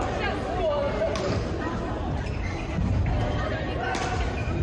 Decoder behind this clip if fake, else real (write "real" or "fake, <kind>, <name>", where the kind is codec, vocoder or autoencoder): real